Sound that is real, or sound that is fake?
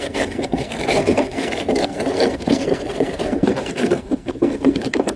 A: fake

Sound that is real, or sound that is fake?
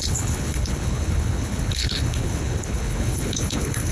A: fake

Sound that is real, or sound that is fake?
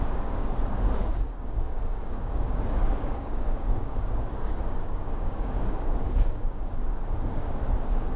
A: fake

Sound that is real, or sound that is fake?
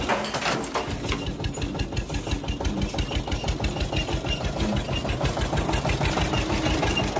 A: real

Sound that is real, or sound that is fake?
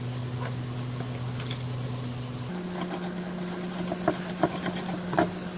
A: real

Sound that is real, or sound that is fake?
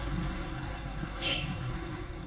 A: fake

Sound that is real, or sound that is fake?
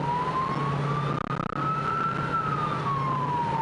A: real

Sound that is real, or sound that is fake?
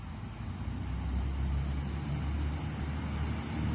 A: real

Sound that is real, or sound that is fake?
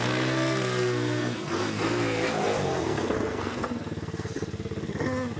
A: fake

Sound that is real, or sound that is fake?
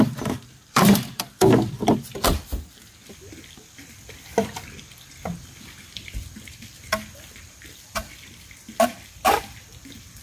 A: fake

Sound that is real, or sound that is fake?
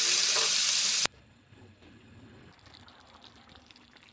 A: fake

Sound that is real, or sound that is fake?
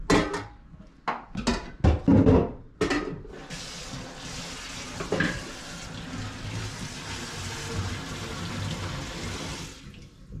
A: real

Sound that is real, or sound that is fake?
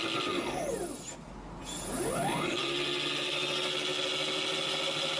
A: real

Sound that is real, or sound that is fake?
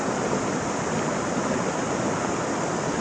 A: real